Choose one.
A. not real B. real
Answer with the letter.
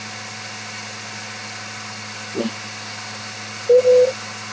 B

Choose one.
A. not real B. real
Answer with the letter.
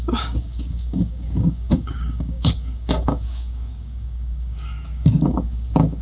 A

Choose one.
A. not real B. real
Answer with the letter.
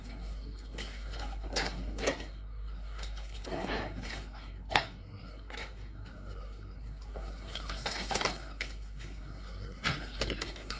A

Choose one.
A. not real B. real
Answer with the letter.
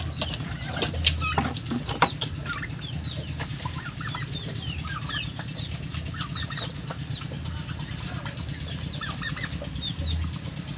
B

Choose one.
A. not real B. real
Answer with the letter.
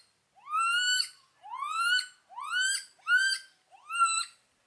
B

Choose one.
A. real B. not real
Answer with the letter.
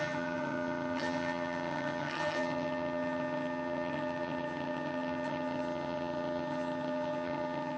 B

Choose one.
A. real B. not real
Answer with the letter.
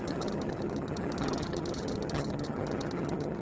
B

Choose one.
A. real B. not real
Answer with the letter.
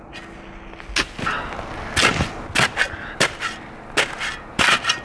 A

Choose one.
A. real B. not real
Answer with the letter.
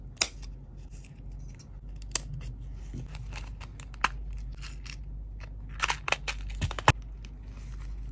A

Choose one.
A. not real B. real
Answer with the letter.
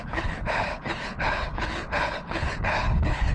A